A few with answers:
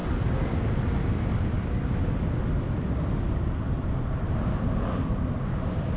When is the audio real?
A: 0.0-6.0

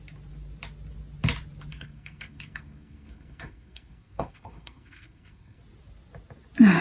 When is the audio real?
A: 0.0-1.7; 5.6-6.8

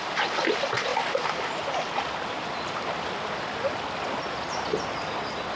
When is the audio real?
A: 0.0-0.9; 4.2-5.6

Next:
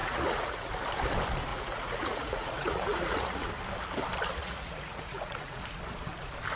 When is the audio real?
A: 0.7-1.5; 3.5-4.4; 5.6-6.6

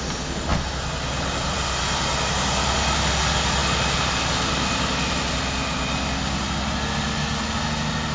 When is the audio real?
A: 0.0-8.1

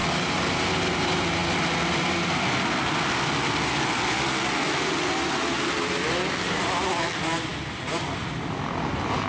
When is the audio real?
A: 0.0-9.3

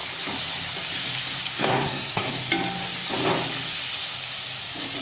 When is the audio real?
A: 0.0-1.5; 2.3-5.0